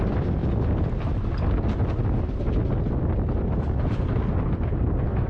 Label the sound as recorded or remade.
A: recorded